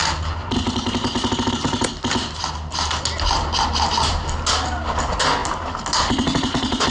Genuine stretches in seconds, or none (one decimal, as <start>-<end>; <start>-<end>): 0.0-6.9